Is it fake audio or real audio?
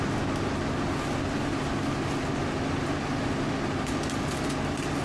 real